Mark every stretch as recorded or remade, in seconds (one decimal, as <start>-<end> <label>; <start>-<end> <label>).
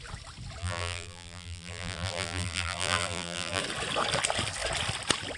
0.0-0.6 recorded; 0.6-3.6 remade; 3.6-5.4 recorded